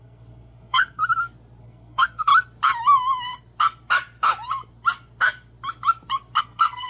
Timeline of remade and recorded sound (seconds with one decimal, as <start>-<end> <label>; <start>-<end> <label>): 0.0-1.0 remade; 1.0-1.6 recorded; 1.6-2.3 remade; 2.3-6.4 recorded; 6.4-6.9 remade